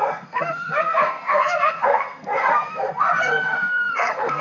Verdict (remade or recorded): remade